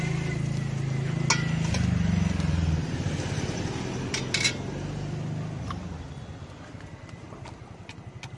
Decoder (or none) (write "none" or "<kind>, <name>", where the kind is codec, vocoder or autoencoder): none